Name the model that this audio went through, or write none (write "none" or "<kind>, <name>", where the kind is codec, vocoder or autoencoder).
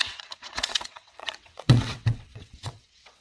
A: vocoder, WaveNeXt